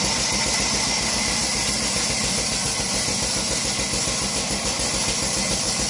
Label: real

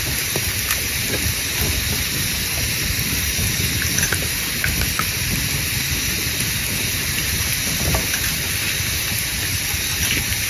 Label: real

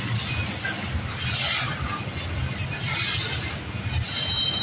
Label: real